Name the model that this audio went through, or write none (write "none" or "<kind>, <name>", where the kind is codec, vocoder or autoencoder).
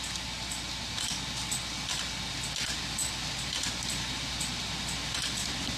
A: none